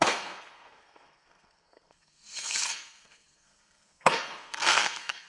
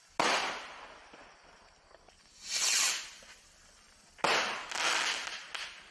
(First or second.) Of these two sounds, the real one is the second